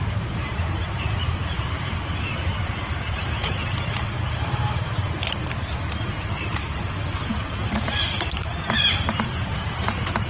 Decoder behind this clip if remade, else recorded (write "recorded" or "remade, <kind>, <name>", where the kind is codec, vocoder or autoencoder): remade, vocoder, BigVGAN v2